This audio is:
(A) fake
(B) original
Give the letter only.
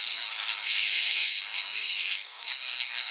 A